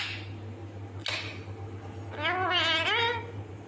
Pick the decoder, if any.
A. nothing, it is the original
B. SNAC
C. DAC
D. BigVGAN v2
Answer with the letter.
A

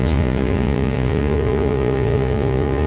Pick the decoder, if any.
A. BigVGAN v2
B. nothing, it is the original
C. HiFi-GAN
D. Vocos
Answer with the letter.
D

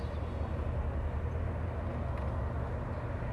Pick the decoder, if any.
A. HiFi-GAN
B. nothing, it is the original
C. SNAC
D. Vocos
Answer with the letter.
B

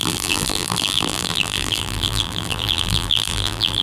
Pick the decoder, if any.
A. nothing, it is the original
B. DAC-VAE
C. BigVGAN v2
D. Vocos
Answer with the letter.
C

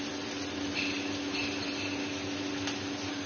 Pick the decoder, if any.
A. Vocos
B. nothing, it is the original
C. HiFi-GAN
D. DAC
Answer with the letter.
B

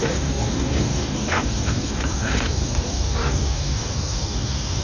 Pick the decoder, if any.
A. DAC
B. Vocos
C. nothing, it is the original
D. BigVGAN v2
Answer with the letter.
A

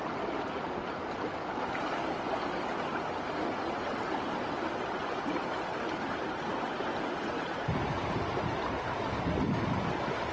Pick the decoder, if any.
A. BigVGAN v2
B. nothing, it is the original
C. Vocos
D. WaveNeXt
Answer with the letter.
B